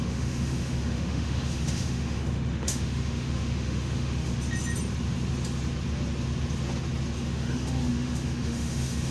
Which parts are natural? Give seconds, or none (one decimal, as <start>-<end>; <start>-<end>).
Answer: 4.3-7.2